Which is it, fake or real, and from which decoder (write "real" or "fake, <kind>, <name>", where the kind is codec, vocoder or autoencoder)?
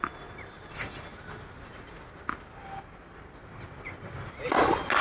real